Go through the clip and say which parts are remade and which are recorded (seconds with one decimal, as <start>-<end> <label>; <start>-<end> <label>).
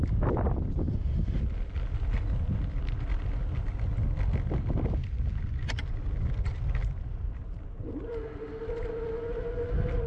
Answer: 0.0-0.8 recorded; 0.8-1.4 remade; 1.4-10.1 recorded